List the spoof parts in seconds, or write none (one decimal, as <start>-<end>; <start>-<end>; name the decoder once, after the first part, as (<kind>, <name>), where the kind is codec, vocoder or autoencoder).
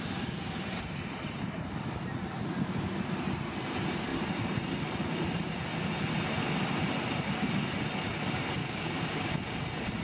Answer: 8.6-9.3 (codec, DAC)